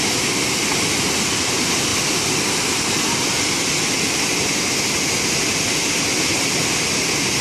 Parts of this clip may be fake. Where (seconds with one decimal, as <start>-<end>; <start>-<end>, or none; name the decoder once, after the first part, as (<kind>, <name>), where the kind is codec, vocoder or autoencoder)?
none